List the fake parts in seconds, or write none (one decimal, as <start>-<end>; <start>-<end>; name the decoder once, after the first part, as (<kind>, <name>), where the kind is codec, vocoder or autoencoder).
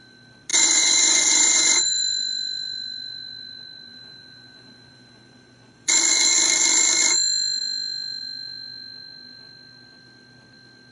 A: 0.5-2.0 (vocoder, Vocos); 3.9-5.9